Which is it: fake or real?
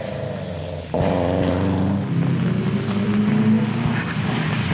real